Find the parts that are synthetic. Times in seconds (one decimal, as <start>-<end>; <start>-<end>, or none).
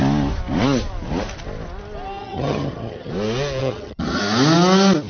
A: 2.2-3.1; 3.6-4.2